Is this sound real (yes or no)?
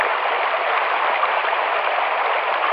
yes